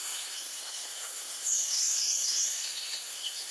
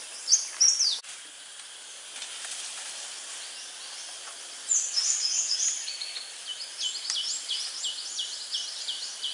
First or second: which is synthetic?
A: first